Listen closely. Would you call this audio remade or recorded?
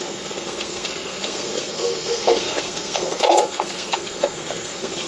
remade